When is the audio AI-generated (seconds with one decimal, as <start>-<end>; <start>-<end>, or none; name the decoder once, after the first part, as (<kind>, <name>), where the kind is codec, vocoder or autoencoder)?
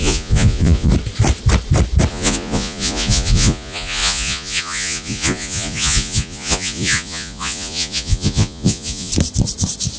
0.0-0.9 (vocoder, Vocos); 2.1-9.1